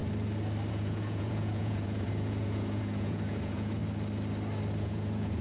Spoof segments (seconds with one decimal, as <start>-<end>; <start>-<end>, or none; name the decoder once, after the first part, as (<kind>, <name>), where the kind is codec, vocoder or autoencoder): 0.7-3.8 (vocoder, Vocos); 4.8-5.4